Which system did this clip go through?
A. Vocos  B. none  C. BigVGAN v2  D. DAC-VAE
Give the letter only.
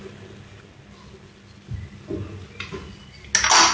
B